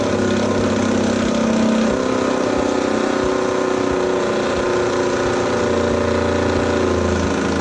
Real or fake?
real